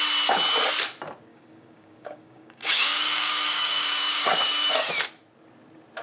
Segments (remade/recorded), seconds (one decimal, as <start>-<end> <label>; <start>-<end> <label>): 0.0-1.3 recorded; 1.3-4.9 remade; 4.9-6.0 recorded